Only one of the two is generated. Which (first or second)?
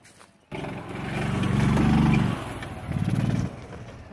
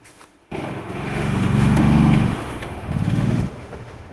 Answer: second